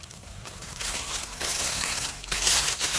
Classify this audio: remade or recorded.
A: remade